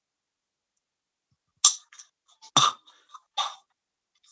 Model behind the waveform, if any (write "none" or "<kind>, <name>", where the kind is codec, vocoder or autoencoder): none